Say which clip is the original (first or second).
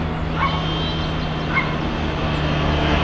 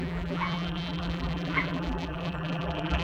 first